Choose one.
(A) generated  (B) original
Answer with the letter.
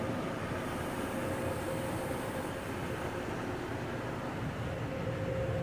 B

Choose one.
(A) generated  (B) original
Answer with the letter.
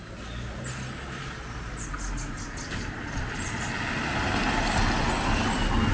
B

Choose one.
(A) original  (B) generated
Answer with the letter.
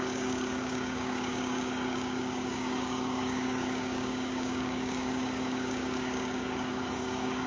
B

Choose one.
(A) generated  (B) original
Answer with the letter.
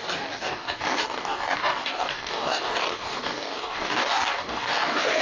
A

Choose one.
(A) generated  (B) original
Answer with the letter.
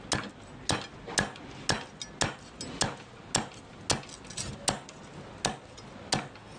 B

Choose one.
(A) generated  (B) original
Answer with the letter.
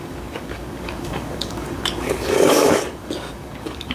A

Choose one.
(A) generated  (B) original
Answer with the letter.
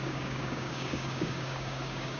A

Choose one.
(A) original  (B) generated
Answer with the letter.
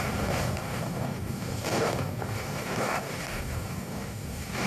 B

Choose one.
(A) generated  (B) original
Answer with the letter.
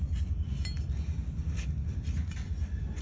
B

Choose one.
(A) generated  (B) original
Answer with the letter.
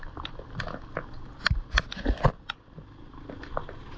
B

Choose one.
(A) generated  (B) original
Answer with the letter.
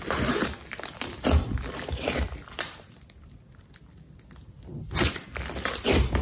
B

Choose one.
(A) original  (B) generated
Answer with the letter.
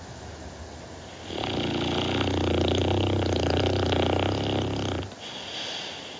A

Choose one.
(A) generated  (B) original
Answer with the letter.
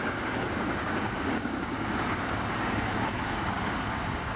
A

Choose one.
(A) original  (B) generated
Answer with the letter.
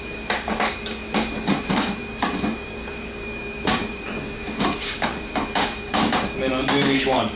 B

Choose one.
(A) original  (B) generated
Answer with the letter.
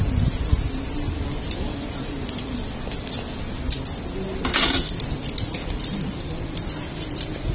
A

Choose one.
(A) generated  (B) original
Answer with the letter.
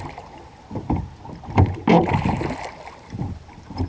B